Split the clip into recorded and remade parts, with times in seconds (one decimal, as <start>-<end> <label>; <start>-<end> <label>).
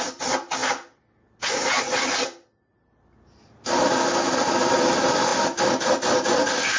0.0-6.8 recorded